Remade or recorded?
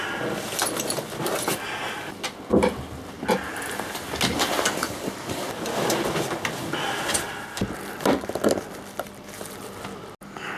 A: recorded